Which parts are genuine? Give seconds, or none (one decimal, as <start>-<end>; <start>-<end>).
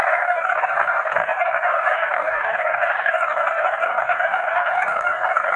none